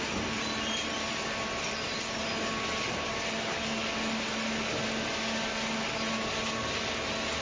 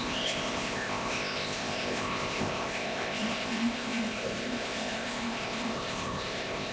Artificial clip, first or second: second